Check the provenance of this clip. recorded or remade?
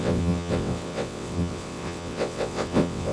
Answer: remade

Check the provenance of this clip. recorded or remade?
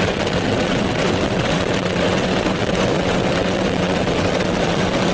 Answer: remade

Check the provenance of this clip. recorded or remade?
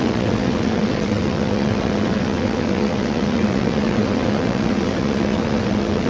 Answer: remade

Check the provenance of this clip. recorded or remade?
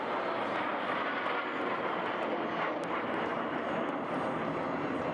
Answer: recorded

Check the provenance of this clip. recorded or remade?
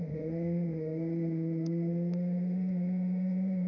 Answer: remade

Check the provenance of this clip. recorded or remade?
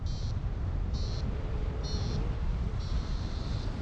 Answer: remade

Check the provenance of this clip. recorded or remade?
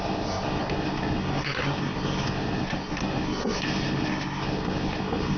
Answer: remade